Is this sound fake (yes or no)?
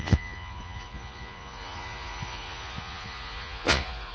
yes